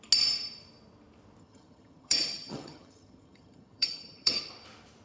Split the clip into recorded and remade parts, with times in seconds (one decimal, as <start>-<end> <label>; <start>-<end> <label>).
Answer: 0.0-1.4 recorded; 1.4-4.4 remade; 4.4-5.0 recorded